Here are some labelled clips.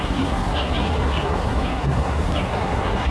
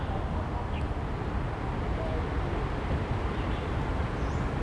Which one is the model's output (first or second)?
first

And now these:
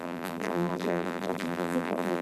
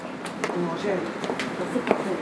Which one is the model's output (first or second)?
first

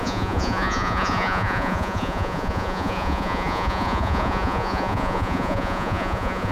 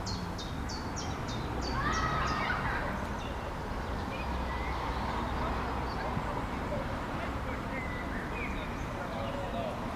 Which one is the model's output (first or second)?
first